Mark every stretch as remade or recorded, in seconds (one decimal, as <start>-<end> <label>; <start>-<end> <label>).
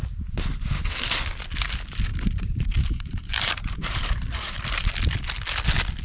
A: 0.0-2.1 recorded; 2.1-4.9 remade; 4.9-6.0 recorded